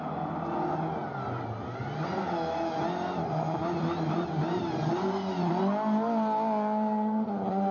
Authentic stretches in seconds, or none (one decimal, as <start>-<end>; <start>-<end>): 0.0-7.7